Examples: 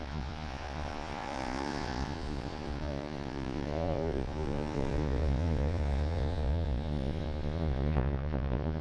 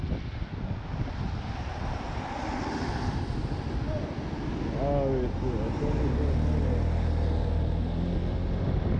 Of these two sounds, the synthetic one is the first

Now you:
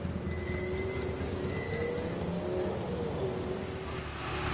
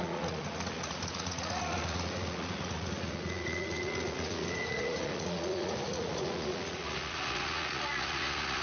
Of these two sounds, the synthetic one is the second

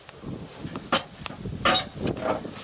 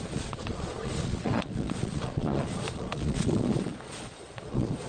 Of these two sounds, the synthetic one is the second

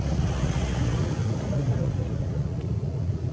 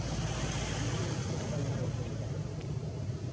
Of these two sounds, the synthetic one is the first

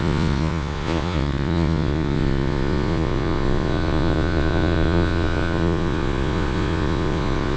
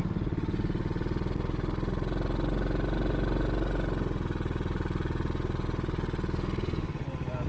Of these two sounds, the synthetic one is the first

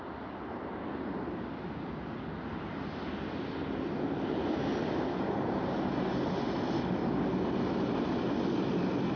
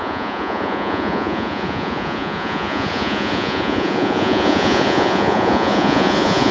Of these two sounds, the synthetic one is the second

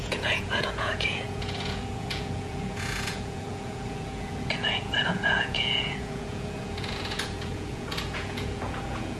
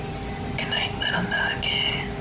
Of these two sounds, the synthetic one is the first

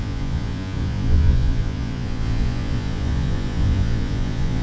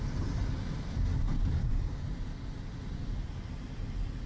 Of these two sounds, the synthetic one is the first